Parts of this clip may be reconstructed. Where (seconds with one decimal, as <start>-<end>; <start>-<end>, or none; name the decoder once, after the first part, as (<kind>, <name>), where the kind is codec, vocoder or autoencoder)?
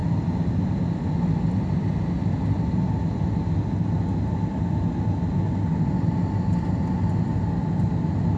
none